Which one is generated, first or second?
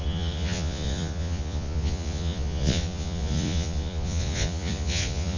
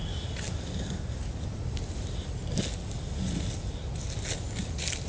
first